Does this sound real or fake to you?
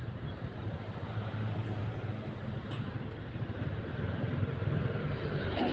fake